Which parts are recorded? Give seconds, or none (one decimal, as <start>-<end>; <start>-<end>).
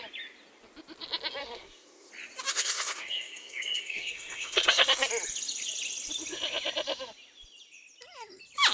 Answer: 0.0-1.4; 2.1-2.5; 5.1-8.7